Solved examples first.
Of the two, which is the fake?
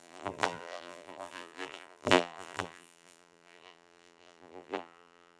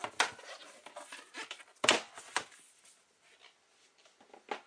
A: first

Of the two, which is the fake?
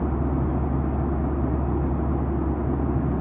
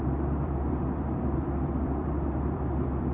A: second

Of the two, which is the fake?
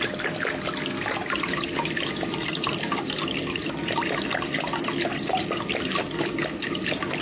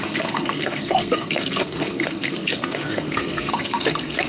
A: second